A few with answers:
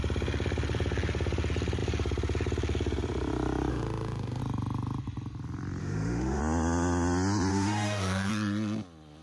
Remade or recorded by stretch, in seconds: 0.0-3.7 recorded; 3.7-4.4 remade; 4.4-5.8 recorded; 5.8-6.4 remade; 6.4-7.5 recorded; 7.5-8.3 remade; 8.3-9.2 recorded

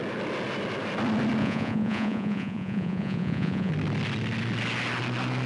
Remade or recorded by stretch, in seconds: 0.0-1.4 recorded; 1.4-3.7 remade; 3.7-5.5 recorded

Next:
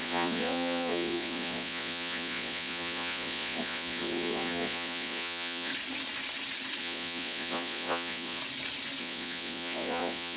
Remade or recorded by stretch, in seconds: 0.0-5.7 remade; 5.7-6.8 recorded; 6.8-8.4 remade; 8.4-9.0 recorded; 9.0-10.4 remade

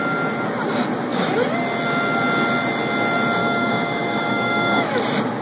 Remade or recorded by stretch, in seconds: 0.0-3.4 recorded; 3.4-5.0 remade; 5.0-5.4 recorded

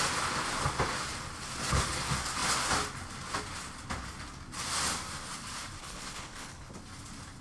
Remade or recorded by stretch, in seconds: 0.0-5.8 recorded; 5.8-6.7 remade; 6.7-7.4 recorded

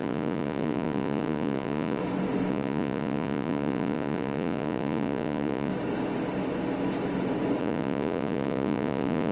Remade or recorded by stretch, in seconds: 0.0-2.0 remade; 2.0-2.5 recorded; 2.5-5.7 remade; 5.7-7.6 recorded; 7.6-9.3 remade